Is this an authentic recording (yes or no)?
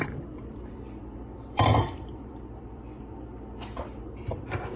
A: no